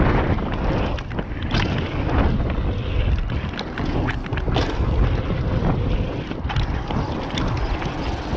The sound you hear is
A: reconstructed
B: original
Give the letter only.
B